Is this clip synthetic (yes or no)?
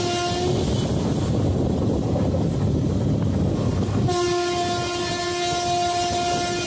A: no